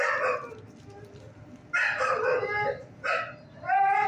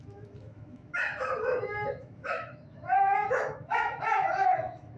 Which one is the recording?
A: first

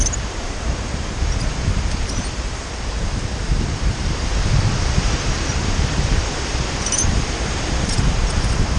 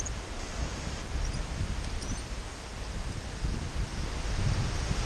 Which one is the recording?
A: second